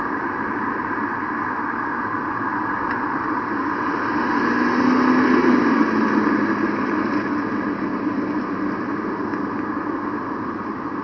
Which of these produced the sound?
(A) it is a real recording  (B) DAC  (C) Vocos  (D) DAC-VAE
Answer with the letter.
A